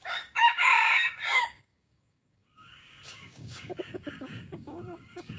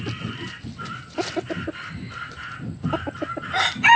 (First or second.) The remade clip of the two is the first